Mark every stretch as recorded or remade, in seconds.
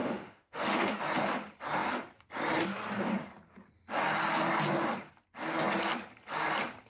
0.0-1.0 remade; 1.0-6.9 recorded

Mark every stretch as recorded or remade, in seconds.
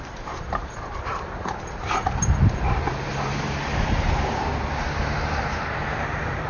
0.0-4.5 remade; 4.5-5.8 recorded; 5.8-6.5 remade